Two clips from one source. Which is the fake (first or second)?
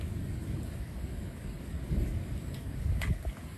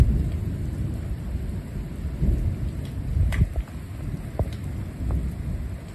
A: first